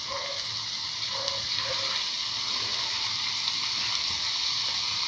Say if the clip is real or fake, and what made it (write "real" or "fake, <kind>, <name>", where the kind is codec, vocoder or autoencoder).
real